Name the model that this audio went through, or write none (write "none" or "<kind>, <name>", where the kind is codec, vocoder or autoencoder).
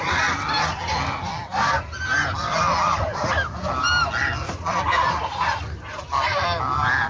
none